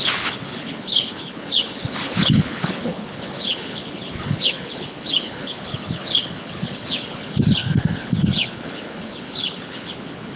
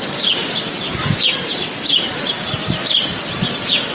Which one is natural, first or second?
second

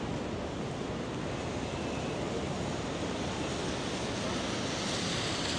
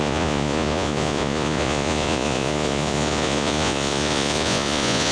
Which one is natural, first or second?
first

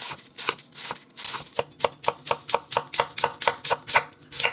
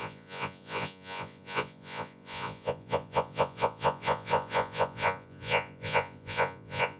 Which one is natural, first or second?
first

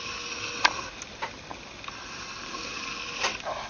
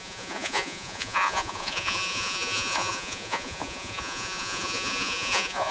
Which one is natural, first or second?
first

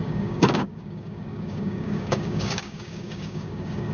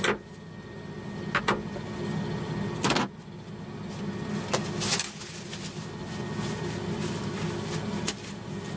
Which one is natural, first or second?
second